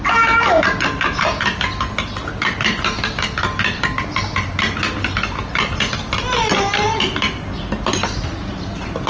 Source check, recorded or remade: recorded